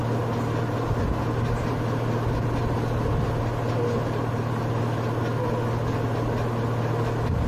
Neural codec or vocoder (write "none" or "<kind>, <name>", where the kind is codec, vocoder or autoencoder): none